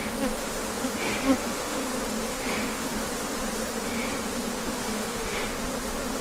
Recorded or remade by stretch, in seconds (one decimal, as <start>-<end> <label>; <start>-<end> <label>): 0.0-1.4 recorded; 1.4-1.9 remade; 1.9-2.3 recorded; 2.3-3.0 remade; 3.0-4.6 recorded; 4.6-5.4 remade; 5.4-6.2 recorded